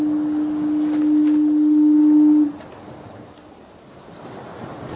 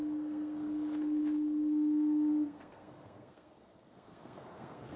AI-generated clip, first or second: second